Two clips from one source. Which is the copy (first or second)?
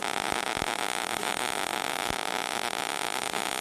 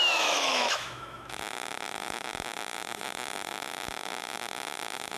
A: second